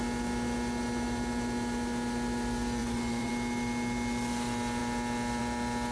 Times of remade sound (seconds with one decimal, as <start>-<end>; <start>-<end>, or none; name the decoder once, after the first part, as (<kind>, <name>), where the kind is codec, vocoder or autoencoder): 2.8-3.3 (vocoder, Vocos)